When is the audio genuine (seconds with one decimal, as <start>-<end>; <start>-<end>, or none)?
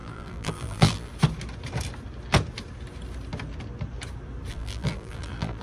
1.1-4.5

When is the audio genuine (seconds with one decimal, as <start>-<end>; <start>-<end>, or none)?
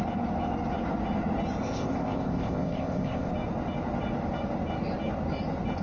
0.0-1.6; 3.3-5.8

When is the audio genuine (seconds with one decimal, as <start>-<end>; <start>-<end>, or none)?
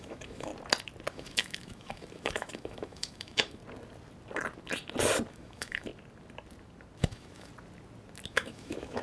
0.5-1.1; 3.6-5.3; 5.9-7.0; 7.5-8.3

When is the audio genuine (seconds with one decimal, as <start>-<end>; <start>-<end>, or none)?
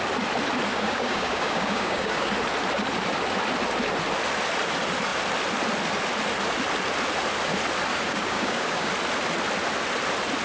0.0-0.7; 2.3-7.9; 8.9-10.4